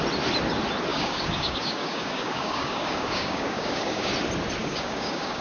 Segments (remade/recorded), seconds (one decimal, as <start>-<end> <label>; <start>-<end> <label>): 0.0-0.9 recorded; 0.9-4.1 remade; 4.1-4.6 recorded; 4.6-5.4 remade